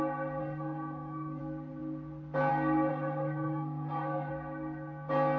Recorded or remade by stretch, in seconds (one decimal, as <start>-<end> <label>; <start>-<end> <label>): 0.0-0.4 recorded; 0.4-1.4 remade; 1.4-2.9 recorded; 2.9-4.3 remade; 4.3-5.4 recorded